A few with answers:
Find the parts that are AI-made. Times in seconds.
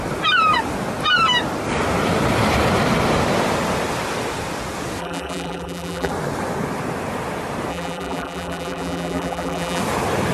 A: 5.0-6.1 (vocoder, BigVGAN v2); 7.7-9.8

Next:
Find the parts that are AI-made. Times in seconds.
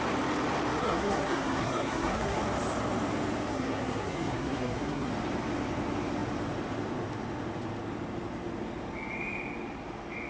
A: 0.8-2.4 (codec, SNAC); 3.5-5.1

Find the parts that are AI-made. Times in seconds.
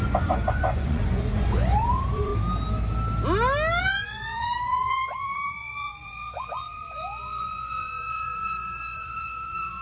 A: 0.0-2.3 (vocoder, Vocos); 3.8-9.8